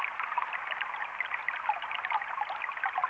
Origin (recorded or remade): recorded